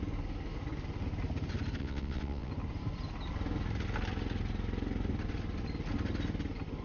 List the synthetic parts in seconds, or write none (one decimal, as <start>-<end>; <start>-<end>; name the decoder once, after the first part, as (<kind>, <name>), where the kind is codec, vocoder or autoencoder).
1.8-2.5 (vocoder, WaveNeXt)